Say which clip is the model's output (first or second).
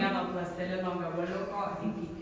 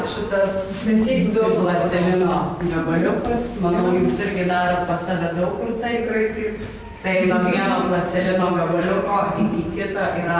second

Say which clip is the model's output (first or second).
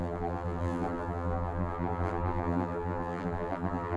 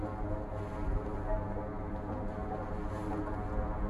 first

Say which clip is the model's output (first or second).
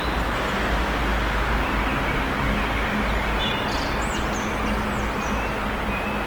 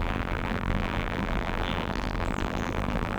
second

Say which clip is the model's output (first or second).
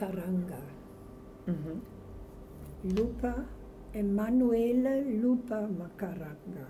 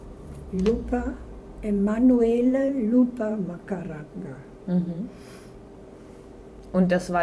second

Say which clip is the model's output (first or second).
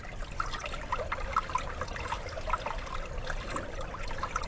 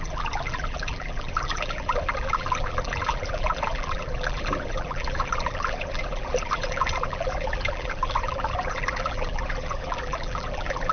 second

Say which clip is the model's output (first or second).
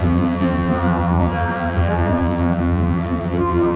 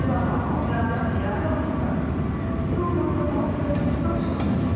first